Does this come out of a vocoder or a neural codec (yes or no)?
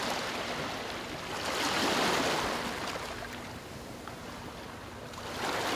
no